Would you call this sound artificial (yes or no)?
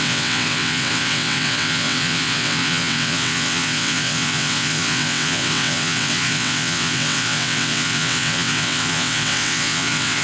yes